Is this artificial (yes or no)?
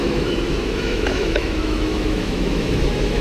yes